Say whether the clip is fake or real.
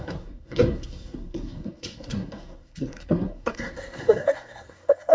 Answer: fake